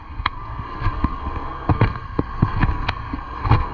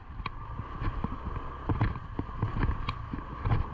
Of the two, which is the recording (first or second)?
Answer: second